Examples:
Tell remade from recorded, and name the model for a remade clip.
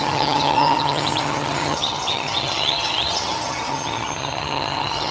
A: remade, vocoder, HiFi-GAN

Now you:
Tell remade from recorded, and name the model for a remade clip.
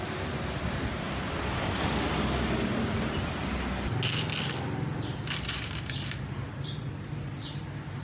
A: recorded